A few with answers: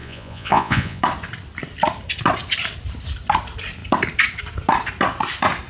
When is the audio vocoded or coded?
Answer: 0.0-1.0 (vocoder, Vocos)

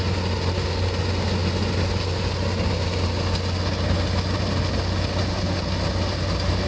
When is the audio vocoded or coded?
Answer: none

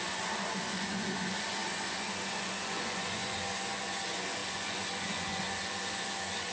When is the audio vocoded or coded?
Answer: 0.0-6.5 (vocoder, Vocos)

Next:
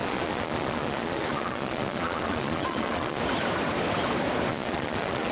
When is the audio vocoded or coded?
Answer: 0.0-3.2 (vocoder, Vocos); 4.5-5.3

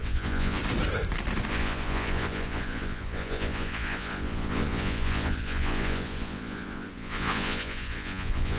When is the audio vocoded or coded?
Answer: 0.0-0.6 (vocoder, Vocos); 1.5-8.6